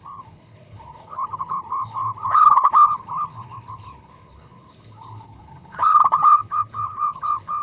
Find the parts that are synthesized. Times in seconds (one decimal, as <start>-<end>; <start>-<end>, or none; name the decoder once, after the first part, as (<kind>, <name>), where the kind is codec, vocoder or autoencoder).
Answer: 0.0-7.6 (codec, HILCodec)

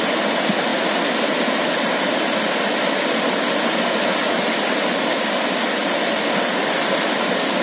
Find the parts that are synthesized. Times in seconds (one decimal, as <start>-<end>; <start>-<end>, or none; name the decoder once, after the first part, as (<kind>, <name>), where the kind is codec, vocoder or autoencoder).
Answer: none

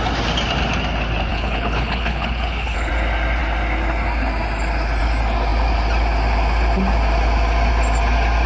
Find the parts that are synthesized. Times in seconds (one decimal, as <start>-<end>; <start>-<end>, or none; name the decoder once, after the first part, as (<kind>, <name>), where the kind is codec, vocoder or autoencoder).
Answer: 1.3-2.9 (codec, HILCodec)

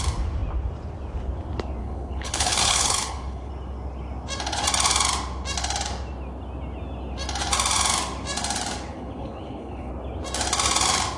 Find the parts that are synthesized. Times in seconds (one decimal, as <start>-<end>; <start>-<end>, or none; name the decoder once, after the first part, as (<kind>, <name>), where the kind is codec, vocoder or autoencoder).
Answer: 1.8-3.5 (codec, HILCodec); 8.9-9.9

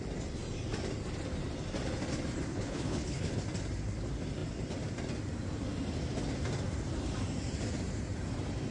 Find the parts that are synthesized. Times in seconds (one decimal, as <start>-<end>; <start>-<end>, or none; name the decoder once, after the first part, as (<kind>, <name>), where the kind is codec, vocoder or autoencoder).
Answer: 2.5-3.3 (codec, HILCodec)

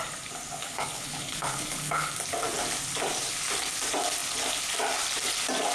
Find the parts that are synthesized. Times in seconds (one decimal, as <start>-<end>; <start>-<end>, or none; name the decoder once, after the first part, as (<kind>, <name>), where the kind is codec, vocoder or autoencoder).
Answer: 0.6-2.1 (codec, HILCodec)